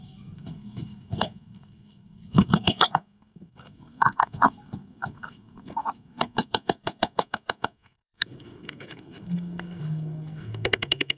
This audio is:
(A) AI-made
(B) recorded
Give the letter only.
A